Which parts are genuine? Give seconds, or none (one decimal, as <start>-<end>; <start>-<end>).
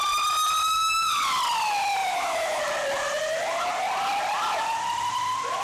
0.0-0.6; 1.1-2.0; 2.6-5.6